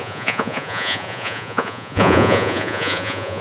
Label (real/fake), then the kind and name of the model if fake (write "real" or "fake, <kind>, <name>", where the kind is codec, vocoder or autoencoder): fake, vocoder, Vocos